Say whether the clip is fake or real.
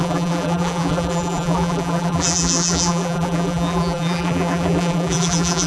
fake